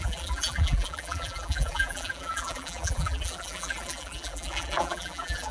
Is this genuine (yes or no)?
no